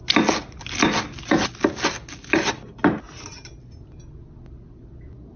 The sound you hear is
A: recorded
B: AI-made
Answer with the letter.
A